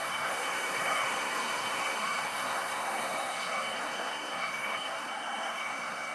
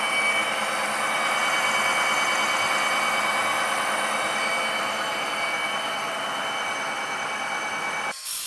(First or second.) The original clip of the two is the second